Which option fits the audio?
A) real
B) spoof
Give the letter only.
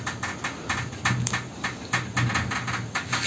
A